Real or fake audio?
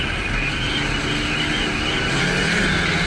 real